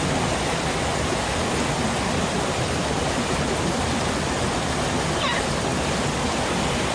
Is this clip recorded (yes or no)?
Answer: yes